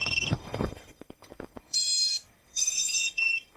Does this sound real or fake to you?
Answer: fake